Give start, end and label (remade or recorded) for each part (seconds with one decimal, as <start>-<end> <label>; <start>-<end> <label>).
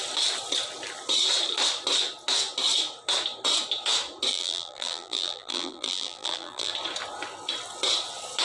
0.0-4.3 recorded; 4.3-6.7 remade; 6.7-8.4 recorded